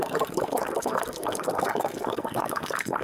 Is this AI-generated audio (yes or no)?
yes